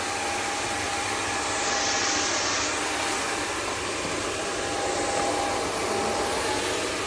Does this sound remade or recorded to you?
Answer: recorded